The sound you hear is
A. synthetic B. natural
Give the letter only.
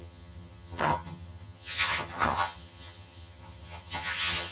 A